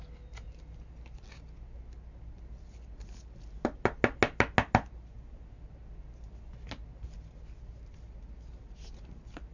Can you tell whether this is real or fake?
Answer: real